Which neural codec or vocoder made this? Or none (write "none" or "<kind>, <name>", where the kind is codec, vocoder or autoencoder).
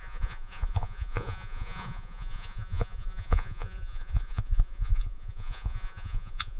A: vocoder, Vocos